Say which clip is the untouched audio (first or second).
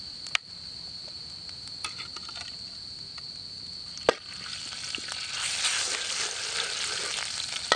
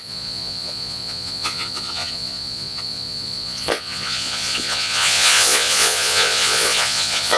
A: first